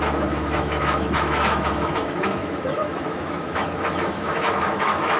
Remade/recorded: remade